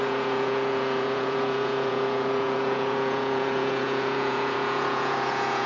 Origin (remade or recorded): remade